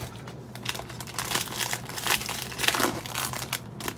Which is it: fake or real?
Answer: fake